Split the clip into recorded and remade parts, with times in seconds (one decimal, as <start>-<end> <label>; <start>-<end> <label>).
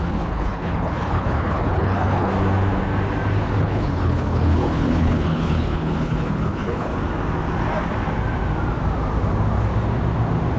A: 0.0-2.3 remade; 2.3-3.6 recorded; 3.6-6.9 remade; 6.9-10.6 recorded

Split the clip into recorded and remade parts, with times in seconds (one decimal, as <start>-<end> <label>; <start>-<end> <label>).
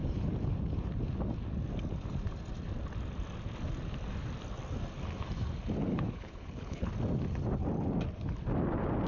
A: 0.0-5.9 recorded; 5.9-6.9 remade; 6.9-9.1 recorded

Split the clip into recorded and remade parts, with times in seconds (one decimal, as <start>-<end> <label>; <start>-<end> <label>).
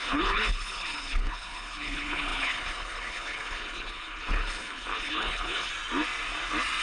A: 0.0-5.7 remade; 5.7-6.8 recorded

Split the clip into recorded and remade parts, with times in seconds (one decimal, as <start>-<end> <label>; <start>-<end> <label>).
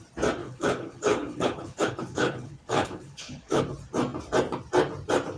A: 0.0-0.4 recorded; 0.4-3.6 remade; 3.6-5.4 recorded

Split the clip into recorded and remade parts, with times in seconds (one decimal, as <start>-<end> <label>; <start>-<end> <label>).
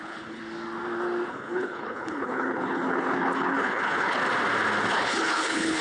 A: 0.0-0.4 remade; 0.4-1.3 recorded; 1.3-4.2 remade; 4.2-4.9 recorded; 4.9-5.8 remade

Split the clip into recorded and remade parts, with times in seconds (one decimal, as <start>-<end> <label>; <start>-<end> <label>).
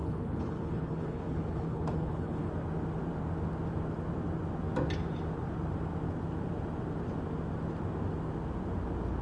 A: 0.0-2.5 remade; 2.5-9.2 recorded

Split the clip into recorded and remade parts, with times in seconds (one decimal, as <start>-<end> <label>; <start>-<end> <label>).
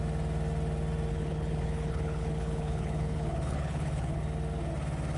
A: 0.0-1.1 recorded; 1.1-4.2 remade; 4.2-5.2 recorded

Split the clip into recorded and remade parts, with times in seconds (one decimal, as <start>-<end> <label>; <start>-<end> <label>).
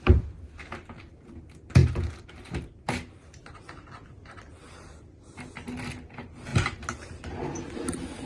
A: 0.0-8.3 recorded